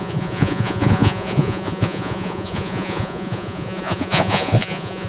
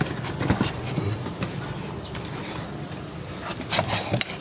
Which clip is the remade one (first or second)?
first